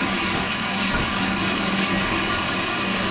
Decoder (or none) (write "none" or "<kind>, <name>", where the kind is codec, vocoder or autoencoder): codec, DAC